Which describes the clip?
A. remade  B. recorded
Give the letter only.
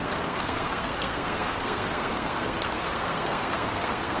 A